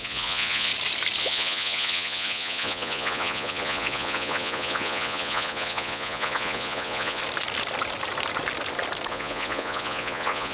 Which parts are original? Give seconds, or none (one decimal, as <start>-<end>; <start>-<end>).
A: 0.7-1.2; 7.2-9.1